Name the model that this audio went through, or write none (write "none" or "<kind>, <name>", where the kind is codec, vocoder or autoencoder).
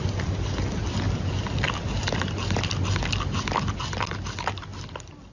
none